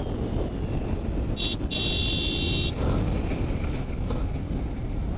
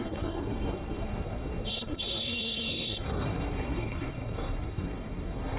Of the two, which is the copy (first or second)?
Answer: second